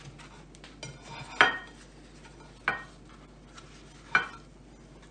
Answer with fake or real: real